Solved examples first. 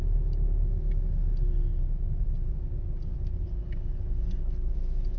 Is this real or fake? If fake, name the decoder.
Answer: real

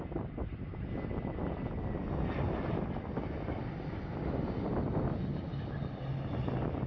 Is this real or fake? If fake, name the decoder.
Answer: real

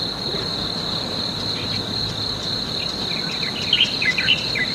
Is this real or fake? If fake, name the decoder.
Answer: real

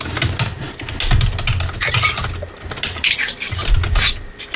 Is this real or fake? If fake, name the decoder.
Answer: real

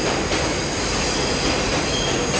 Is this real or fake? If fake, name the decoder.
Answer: real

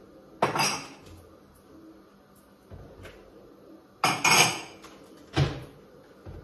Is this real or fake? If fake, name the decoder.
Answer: real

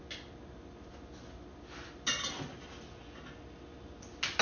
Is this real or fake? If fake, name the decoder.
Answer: real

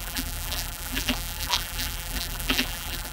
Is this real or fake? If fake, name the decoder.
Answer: fake, vocoder, BigVGAN v2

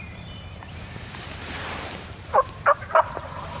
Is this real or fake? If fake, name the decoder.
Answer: fake, vocoder, BigVGAN v2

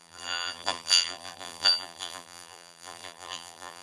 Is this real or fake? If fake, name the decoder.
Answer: fake, vocoder, BigVGAN v2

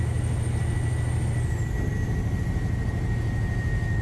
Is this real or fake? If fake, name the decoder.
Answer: real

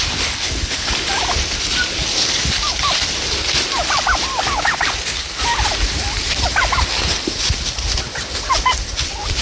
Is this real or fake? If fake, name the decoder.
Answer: fake, vocoder, BigVGAN v2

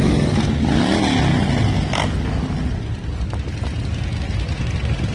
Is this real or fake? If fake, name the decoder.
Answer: real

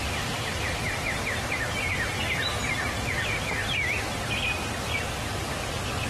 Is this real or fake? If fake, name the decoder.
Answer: real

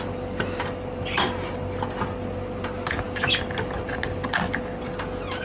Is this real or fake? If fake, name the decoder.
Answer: real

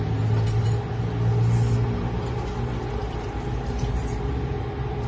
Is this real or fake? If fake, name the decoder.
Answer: real